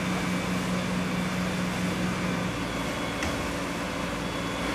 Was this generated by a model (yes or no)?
no